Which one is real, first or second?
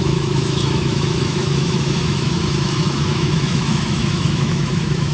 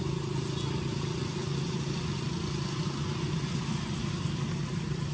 second